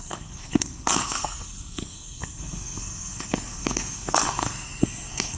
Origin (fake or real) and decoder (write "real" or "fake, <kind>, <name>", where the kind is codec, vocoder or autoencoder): fake, codec, SNAC